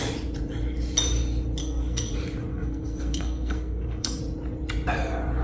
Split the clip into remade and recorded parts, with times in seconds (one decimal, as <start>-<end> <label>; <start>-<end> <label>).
0.0-1.6 recorded; 1.6-2.1 remade; 2.1-2.5 recorded; 2.5-4.2 remade; 4.2-5.4 recorded